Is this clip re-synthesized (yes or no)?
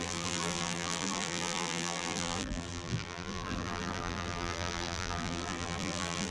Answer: yes